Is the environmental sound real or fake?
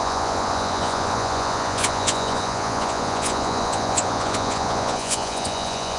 fake